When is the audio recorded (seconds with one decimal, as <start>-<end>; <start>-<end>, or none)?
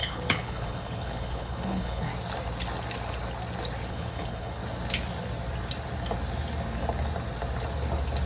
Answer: 2.1-3.9; 4.6-8.3